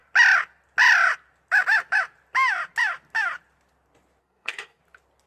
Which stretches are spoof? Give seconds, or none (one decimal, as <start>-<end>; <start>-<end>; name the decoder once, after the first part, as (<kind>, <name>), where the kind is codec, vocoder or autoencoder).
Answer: 4.2-4.8 (codec, SNAC)